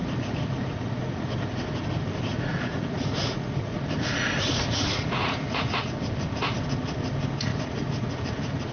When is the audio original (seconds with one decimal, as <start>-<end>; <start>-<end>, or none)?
1.3-2.3; 6.6-7.5